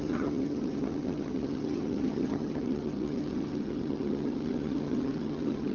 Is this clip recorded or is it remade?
remade